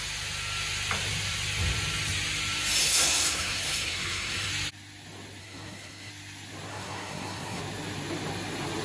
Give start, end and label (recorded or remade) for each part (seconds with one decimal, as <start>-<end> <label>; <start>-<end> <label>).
0.0-2.8 recorded; 2.8-4.5 remade; 4.5-5.4 recorded; 5.4-6.1 remade; 6.1-6.7 recorded; 6.7-7.6 remade; 7.6-8.8 recorded